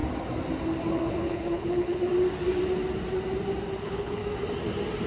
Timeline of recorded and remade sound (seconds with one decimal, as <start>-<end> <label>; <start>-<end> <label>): 0.0-0.9 recorded; 0.9-2.1 remade; 2.1-3.8 recorded; 3.8-4.2 remade; 4.2-5.1 recorded